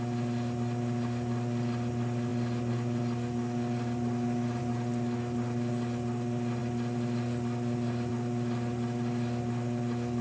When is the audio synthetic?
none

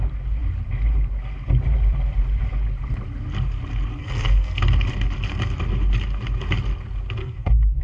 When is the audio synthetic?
4.0-4.6 (codec, SNAC); 7.2-7.8